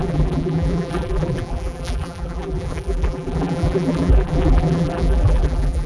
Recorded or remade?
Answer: remade